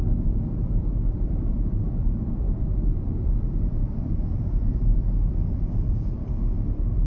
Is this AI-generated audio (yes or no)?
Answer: yes